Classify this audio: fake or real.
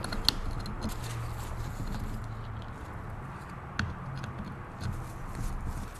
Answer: real